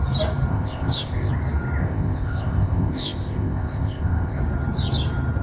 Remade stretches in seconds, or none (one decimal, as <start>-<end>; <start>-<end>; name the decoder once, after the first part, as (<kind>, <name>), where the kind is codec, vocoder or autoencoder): 0.5-1.3 (codec, ZipCodec); 1.8-4.4